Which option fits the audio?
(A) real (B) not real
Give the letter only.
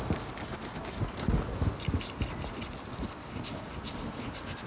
A